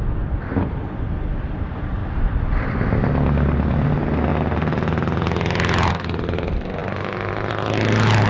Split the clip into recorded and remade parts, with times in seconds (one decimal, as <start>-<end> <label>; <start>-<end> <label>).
0.0-2.0 recorded; 2.0-2.7 remade; 2.7-8.3 recorded